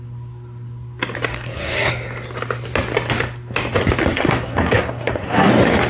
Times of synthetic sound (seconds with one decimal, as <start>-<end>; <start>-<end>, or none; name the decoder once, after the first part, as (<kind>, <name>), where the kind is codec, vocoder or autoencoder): 1.3-1.9 (codec, SNAC); 4.0-5.5